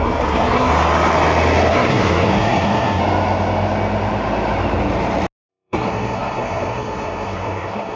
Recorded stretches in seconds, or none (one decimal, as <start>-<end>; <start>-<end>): 0.7-1.7; 3.0-5.5